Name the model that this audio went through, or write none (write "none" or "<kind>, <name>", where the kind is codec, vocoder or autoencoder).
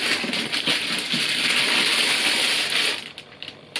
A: vocoder, BigVGAN v2